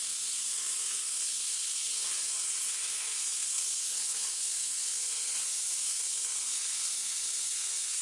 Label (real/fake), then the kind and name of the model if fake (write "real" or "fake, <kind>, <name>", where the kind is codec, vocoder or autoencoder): fake, codec, SNAC